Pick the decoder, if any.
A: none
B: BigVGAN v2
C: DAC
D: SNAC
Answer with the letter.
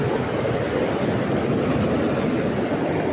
A